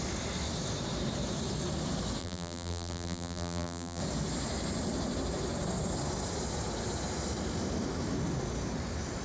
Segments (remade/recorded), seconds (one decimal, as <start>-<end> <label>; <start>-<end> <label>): 0.0-2.2 recorded; 2.2-4.0 remade; 4.0-9.2 recorded